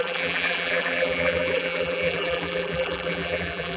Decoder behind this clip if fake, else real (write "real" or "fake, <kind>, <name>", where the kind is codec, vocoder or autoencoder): fake, vocoder, BigVGAN v2